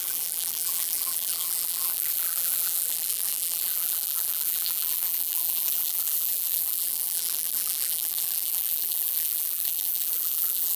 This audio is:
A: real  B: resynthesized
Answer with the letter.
B